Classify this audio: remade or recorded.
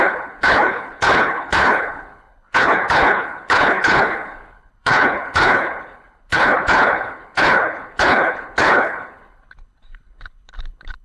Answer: remade